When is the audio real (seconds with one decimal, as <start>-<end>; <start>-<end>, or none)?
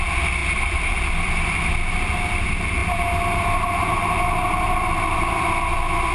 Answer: 0.0-0.4; 1.7-6.1